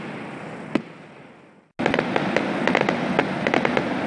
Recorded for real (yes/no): yes